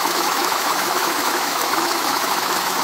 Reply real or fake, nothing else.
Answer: fake